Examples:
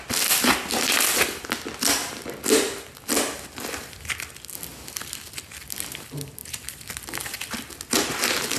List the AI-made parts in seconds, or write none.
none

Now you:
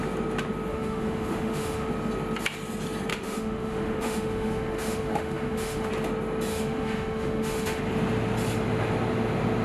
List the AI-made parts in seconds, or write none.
0.7-1.9 (autoencoder, DAC-VAE); 3.1-5.9; 6.5-7.8

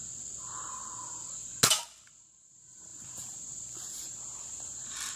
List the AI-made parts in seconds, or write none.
0.7-1.4 (vocoder, BigVGAN v2); 2.4-5.2

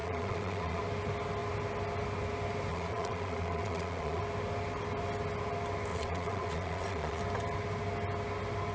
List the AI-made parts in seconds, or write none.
0.0-0.8 (vocoder, Vocos); 2.7-4.2; 5.9-7.2

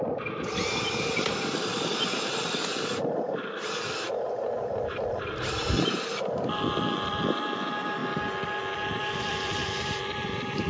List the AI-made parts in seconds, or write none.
0.0-8.0 (vocoder, BigVGAN v2); 8.9-10.7